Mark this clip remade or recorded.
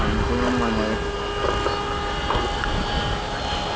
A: recorded